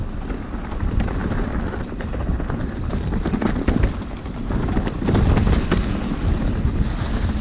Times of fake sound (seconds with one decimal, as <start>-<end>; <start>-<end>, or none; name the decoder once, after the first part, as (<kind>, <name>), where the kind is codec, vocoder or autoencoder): 1.2-2.1 (vocoder, BigVGAN v2)